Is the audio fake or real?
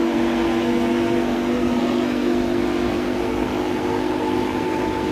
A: fake